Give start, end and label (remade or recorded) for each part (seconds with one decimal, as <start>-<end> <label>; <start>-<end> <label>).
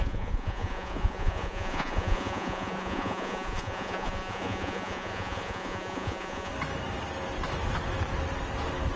0.0-6.5 remade; 6.5-9.0 recorded